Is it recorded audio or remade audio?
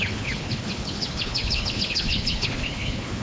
remade